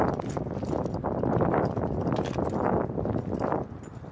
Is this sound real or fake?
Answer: real